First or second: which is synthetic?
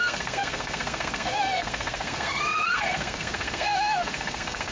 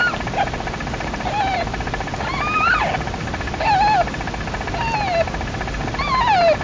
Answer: first